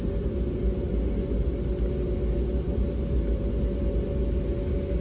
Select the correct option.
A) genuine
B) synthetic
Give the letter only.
A